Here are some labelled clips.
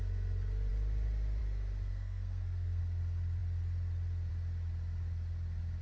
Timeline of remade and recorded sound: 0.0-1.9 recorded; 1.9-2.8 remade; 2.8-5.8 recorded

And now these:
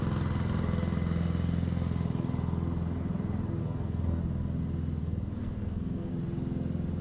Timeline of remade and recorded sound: 0.0-3.6 recorded; 3.6-4.2 remade; 4.2-5.0 recorded; 5.0-6.1 remade; 6.1-7.0 recorded

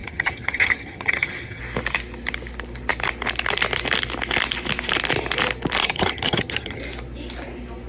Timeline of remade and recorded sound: 0.0-1.6 remade; 1.6-5.8 recorded; 5.8-6.8 remade; 6.8-7.9 recorded